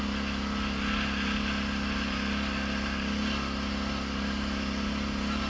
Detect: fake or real real